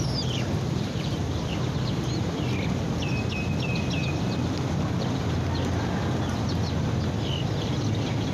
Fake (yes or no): no